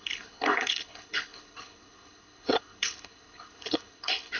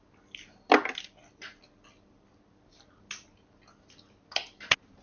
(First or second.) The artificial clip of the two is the first